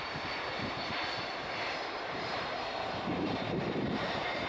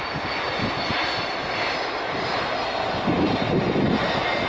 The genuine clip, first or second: second